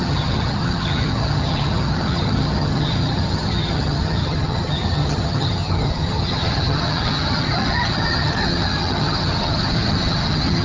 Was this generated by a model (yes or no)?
yes